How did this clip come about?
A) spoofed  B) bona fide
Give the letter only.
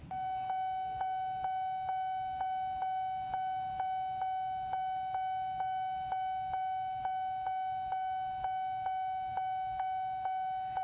B